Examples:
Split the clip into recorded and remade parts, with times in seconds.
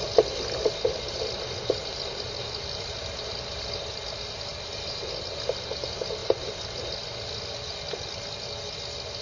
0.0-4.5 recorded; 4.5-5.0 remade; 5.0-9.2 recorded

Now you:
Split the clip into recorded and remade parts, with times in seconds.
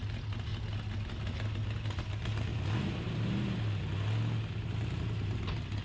0.0-5.8 recorded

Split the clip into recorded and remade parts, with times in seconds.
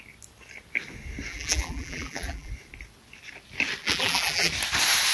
0.0-1.3 recorded; 1.3-2.5 remade; 2.5-3.8 recorded; 3.8-4.5 remade; 4.5-5.1 recorded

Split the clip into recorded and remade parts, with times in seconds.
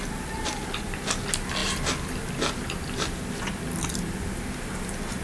0.0-5.2 recorded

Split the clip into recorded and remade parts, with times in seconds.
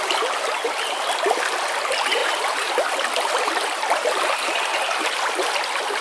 0.0-2.2 recorded; 2.2-5.0 remade; 5.0-6.0 recorded